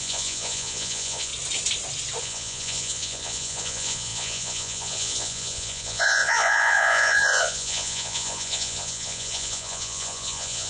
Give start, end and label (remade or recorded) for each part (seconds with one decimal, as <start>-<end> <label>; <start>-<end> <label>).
0.0-1.3 remade; 1.3-2.2 recorded; 2.2-10.7 remade

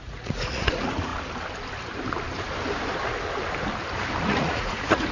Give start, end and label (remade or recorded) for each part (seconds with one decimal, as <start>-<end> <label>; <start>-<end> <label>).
0.0-1.1 remade; 1.1-4.2 recorded; 4.2-5.1 remade